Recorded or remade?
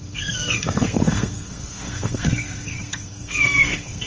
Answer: remade